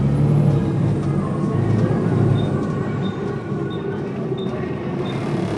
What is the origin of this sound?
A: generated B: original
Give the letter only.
B